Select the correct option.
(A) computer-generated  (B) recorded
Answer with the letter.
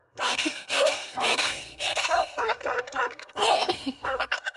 A